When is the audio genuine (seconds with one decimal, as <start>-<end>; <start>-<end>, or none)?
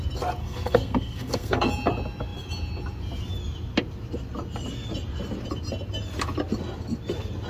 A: 0.0-0.4; 1.7-7.5